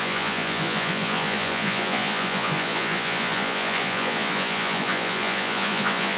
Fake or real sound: fake